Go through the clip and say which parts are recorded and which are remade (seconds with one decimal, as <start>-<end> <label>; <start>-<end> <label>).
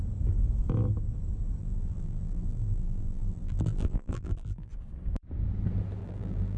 0.0-1.6 recorded; 1.6-4.7 remade; 4.7-6.0 recorded; 6.0-6.6 remade